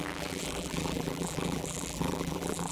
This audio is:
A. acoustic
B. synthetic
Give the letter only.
B